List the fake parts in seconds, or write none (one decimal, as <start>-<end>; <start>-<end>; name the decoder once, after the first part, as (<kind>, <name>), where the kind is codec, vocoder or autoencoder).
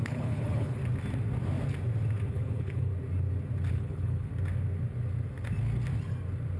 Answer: 0.0-0.8 (codec, HILCodec); 2.3-2.9; 3.7-4.3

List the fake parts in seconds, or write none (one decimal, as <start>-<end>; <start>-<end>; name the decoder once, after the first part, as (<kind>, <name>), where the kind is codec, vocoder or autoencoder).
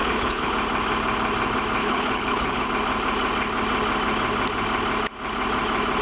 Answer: 0.0-0.5 (codec, HILCodec); 1.8-2.7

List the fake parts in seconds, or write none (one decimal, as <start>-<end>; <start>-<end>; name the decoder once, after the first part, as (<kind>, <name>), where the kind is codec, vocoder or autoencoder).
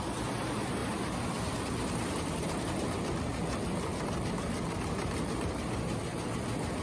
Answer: none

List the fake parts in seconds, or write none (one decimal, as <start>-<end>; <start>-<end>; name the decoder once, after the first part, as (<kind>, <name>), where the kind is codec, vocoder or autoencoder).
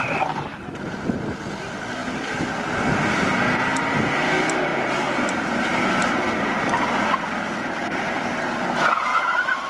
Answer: none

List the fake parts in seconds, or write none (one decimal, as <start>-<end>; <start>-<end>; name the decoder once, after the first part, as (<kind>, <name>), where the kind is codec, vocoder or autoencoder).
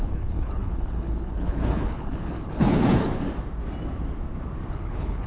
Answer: 0.0-3.0 (codec, HILCodec); 4.7-5.3